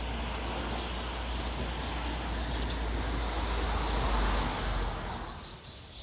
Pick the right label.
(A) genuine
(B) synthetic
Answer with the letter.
A